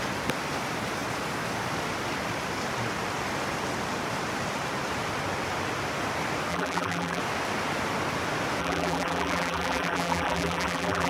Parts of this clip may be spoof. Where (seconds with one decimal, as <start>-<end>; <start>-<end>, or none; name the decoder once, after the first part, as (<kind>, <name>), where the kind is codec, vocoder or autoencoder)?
6.5-7.2 (vocoder, BigVGAN v2); 8.6-11.1